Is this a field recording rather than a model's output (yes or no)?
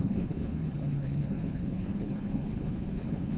no